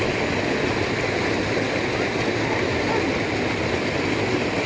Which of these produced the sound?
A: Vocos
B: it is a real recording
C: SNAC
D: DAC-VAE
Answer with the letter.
B